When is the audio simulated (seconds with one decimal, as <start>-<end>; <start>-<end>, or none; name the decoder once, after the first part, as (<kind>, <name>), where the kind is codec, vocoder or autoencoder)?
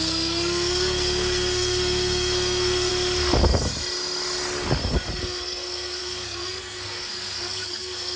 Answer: 0.0-2.9 (codec, SNAC); 5.2-8.2